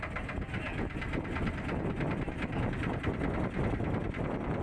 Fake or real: real